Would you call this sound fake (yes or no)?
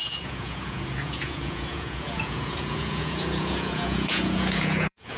yes